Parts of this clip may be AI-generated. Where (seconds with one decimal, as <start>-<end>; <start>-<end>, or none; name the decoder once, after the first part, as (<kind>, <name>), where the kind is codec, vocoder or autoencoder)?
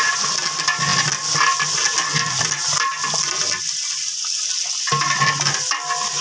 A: none